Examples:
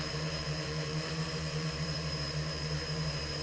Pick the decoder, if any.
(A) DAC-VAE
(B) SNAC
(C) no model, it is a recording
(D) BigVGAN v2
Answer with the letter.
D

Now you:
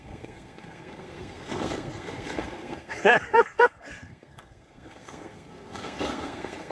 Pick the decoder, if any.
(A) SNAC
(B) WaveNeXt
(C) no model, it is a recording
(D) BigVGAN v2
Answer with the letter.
A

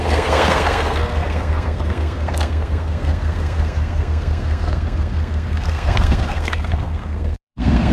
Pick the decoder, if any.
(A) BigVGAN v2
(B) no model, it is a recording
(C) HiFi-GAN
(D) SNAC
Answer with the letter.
D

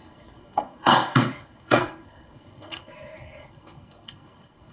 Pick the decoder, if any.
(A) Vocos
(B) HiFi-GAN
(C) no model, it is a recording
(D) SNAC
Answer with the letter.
D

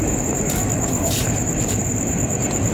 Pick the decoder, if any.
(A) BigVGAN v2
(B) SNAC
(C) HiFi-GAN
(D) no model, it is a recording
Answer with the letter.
A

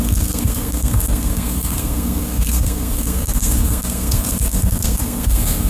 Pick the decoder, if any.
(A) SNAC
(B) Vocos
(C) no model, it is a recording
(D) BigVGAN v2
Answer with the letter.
A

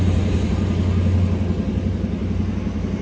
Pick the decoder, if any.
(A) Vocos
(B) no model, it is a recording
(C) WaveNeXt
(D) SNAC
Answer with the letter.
B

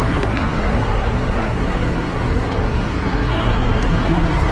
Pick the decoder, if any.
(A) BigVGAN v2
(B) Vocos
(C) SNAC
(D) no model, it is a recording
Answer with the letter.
C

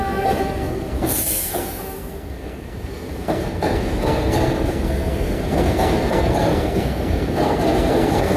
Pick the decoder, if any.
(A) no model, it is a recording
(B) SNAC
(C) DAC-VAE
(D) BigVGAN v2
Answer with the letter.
B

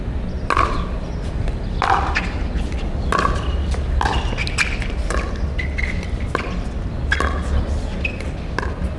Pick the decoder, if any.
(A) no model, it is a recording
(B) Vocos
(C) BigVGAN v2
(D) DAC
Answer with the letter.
A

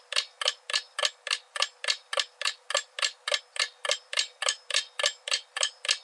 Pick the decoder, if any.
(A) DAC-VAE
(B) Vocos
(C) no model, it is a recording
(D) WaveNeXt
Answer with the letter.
C